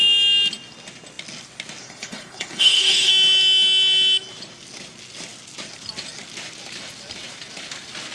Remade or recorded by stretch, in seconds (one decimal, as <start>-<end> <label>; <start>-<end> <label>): 0.0-1.8 recorded; 1.8-3.1 remade; 3.1-8.1 recorded